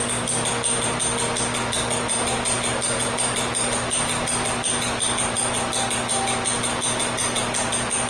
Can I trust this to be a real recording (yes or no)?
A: yes